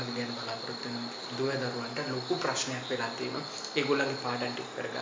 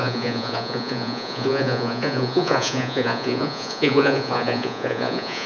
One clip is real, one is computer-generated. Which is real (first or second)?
first